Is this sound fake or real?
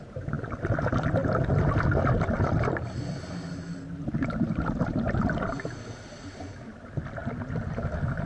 real